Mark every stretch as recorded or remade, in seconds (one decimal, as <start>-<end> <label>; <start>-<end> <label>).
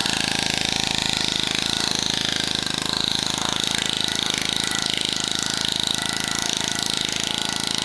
0.0-7.8 recorded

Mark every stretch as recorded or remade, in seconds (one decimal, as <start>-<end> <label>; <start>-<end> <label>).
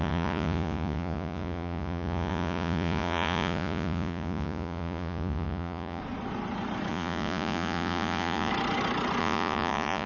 0.0-6.0 remade; 6.0-6.9 recorded; 6.9-8.5 remade; 8.5-9.2 recorded; 9.2-10.1 remade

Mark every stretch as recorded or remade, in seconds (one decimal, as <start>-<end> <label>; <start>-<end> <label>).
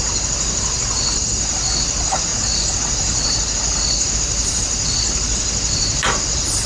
0.0-6.7 recorded